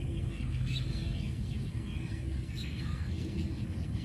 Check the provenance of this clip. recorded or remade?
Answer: remade